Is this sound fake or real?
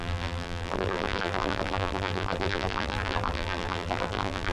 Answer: fake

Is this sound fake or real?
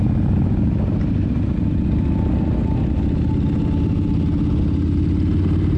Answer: real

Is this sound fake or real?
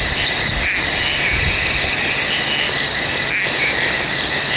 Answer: real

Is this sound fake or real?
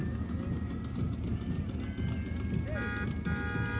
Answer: real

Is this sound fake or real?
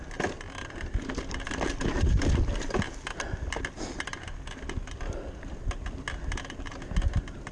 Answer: real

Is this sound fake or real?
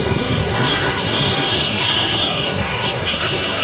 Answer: fake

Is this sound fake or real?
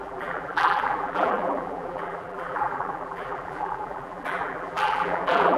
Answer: fake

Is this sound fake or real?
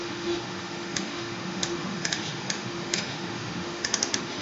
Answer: fake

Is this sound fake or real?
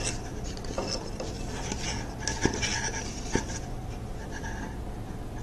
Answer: real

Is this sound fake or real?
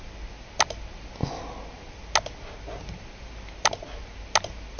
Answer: real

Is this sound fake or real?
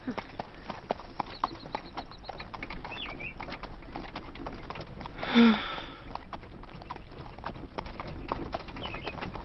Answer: real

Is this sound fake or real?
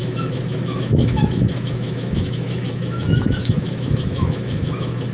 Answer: fake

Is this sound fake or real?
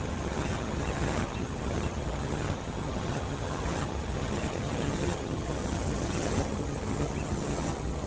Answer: fake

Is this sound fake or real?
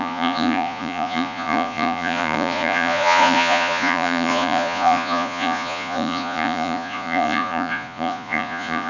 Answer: fake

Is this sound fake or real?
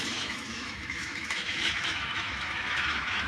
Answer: fake